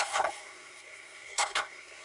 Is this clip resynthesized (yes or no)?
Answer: yes